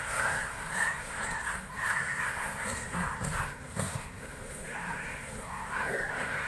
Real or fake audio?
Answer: fake